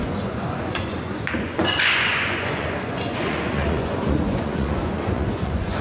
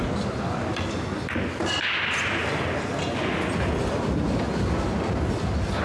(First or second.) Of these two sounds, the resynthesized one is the first